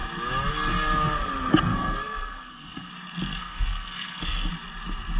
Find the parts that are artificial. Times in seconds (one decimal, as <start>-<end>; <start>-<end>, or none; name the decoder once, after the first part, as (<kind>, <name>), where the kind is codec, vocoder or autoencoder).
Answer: 1.7-2.9 (codec, SNAC); 3.3-4.5